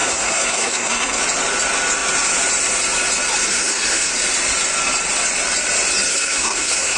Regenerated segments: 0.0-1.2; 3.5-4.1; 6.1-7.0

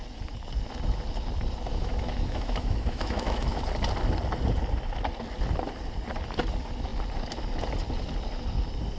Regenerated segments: 1.7-3.6

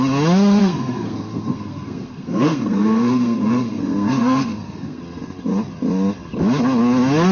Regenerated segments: 0.6-5.0